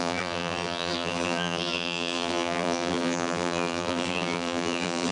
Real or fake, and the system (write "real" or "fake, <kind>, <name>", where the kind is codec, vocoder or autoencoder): fake, vocoder, BigVGAN v2